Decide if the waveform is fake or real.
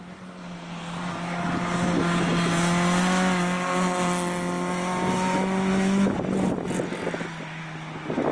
real